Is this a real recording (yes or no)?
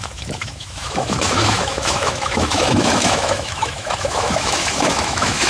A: no